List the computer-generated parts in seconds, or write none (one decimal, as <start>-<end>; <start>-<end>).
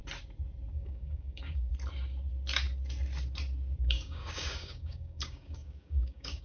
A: 0.7-1.7; 3.8-6.4